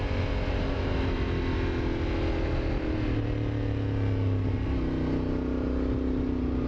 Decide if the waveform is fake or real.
real